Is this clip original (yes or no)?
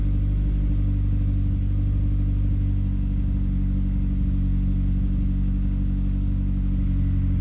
yes